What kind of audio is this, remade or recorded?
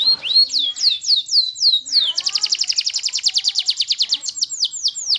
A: recorded